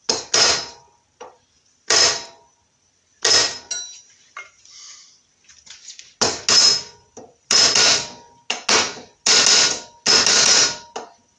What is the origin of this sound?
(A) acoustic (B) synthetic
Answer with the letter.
A